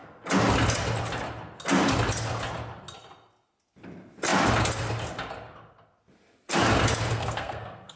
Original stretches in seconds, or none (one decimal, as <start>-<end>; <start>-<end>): 0.0-7.1